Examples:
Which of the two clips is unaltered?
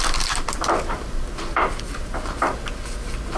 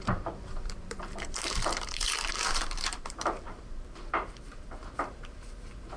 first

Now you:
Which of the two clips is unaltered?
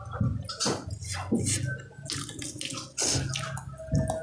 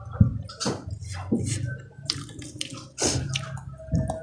first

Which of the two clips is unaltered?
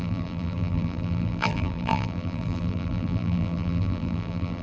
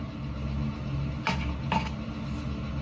second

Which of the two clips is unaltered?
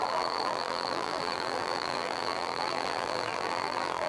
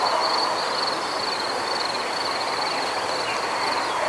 second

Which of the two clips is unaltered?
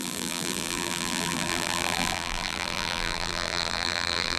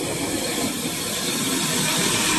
second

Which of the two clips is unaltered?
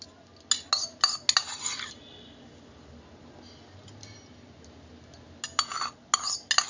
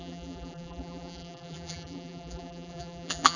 first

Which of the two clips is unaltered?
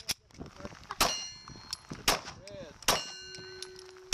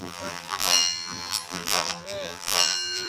first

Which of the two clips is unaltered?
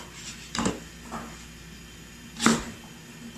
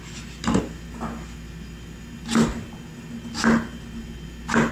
second